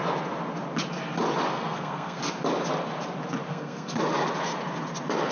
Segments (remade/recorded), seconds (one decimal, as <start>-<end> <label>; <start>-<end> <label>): 0.0-1.5 recorded; 1.5-2.2 remade; 2.2-3.5 recorded; 3.5-4.0 remade; 4.0-5.3 recorded